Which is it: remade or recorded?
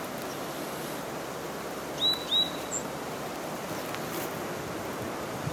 recorded